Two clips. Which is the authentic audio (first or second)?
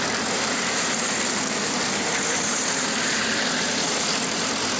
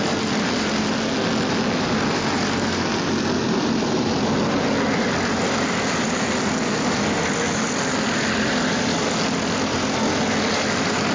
second